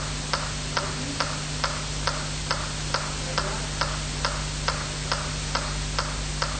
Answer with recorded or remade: recorded